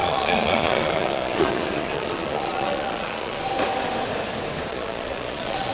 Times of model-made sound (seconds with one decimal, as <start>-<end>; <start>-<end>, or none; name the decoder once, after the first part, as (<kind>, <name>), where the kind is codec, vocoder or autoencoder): 0.0-3.4 (vocoder, Vocos); 4.7-5.7